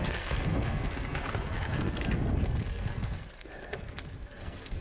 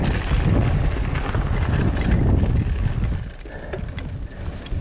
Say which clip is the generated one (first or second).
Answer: first